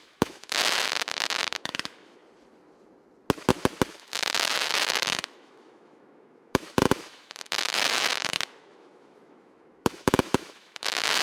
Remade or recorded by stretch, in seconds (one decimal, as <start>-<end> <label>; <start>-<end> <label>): 0.0-2.2 remade; 2.2-3.9 recorded; 3.9-11.2 remade